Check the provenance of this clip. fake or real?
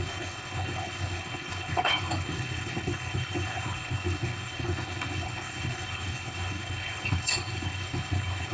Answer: fake